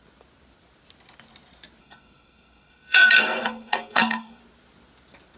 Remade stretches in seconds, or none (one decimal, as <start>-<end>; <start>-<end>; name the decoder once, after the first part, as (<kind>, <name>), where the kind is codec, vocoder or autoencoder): 1.8-4.4 (codec, SNAC)